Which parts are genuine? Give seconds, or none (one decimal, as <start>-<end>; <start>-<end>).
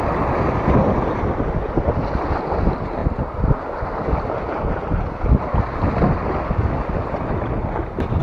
0.0-8.2